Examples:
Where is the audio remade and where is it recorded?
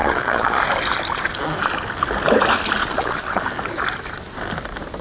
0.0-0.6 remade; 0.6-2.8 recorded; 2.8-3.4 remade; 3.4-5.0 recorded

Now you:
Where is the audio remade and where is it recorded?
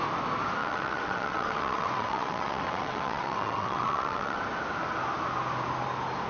0.0-0.6 recorded; 0.6-4.4 remade; 4.4-6.3 recorded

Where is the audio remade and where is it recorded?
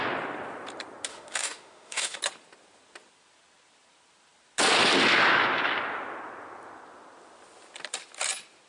0.0-1.1 recorded; 1.1-2.2 remade; 2.2-8.7 recorded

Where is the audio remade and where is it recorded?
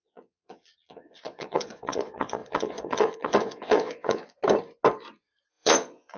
0.0-4.4 remade; 4.4-5.5 recorded; 5.5-6.2 remade